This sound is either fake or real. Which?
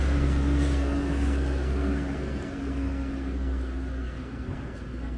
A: fake